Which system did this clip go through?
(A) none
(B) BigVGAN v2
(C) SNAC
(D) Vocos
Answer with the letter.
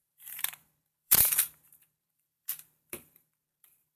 B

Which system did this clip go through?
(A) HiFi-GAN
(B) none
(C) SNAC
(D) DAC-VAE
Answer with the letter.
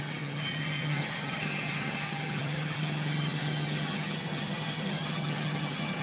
A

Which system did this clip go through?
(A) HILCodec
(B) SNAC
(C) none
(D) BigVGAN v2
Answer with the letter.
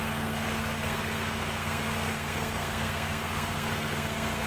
B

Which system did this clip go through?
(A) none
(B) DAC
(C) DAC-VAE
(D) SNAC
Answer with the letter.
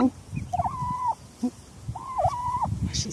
A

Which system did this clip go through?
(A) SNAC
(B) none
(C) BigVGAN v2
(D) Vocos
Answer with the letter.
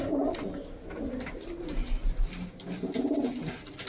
B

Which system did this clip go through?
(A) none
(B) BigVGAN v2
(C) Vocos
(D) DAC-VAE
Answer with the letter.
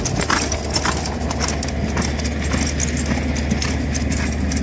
A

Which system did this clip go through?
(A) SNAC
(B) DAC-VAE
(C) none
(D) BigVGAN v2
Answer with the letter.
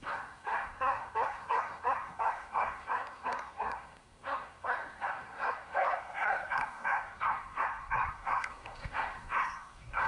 A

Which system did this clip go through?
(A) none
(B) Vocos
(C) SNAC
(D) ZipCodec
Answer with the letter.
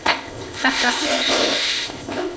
D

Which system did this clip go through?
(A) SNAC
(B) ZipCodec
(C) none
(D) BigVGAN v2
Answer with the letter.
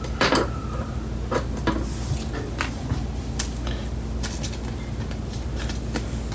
C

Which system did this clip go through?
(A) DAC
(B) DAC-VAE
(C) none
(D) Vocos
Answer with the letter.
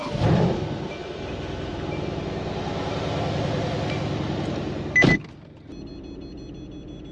C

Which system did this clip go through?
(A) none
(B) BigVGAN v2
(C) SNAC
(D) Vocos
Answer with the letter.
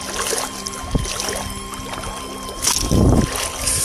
A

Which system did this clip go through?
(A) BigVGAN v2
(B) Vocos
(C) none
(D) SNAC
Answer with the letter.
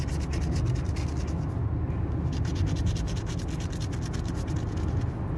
C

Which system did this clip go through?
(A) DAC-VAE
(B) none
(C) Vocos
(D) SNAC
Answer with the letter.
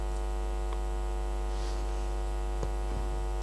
B